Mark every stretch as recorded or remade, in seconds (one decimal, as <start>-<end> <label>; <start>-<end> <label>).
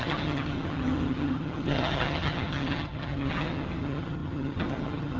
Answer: 0.0-5.2 remade